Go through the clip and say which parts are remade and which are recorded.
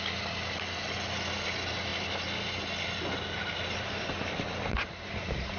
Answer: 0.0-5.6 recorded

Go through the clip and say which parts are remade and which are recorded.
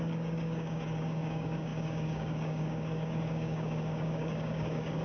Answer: 0.0-5.0 remade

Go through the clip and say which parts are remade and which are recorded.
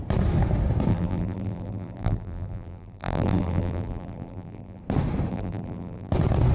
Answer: 0.0-0.9 recorded; 0.9-4.8 remade; 4.8-5.3 recorded; 5.3-6.1 remade; 6.1-6.5 recorded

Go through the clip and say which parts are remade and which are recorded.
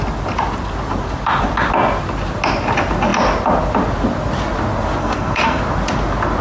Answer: 0.0-5.0 recorded; 5.0-5.6 remade; 5.6-6.4 recorded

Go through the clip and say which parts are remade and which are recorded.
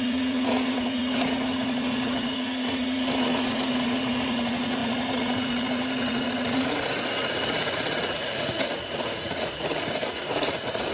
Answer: 0.0-10.9 remade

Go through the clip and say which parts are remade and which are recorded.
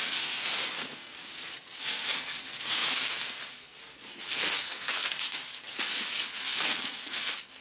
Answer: 0.0-7.6 remade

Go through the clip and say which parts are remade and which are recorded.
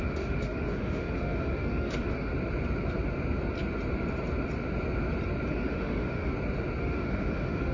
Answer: 0.0-2.3 remade; 2.3-5.5 recorded; 5.5-6.3 remade; 6.3-6.8 recorded; 6.8-7.7 remade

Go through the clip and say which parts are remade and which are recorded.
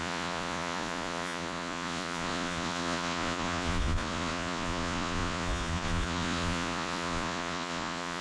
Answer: 0.0-8.2 remade